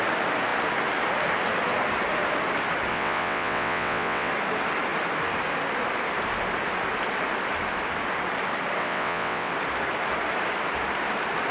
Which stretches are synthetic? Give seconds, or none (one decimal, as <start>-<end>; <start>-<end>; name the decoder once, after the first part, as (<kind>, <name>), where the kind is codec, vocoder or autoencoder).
2.9-4.3 (vocoder, WaveNeXt); 8.8-9.5